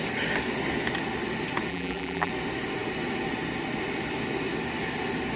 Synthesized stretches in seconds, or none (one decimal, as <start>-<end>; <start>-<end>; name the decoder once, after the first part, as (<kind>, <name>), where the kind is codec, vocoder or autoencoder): 1.7-2.3 (vocoder, BigVGAN v2)